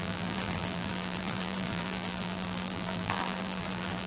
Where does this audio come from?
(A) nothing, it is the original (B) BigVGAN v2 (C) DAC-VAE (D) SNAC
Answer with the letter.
B